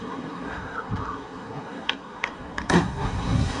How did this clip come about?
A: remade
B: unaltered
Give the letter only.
A